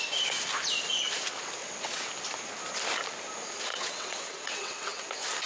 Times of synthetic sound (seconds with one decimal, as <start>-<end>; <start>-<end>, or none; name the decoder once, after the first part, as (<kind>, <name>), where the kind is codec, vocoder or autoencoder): 1.6-2.1 (vocoder, WaveNeXt); 3.7-5.1